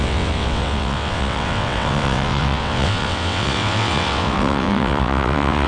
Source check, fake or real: fake